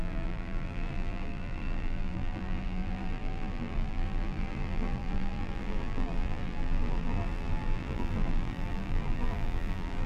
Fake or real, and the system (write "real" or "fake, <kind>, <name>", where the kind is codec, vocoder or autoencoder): fake, vocoder, BigVGAN v2